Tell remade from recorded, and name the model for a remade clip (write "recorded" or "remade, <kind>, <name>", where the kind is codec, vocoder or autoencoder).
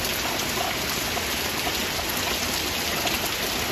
recorded